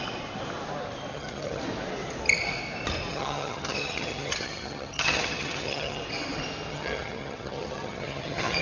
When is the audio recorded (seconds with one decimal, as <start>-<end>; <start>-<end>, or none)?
0.0-1.1; 1.6-3.1; 6.0-6.7